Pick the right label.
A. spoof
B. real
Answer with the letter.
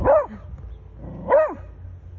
B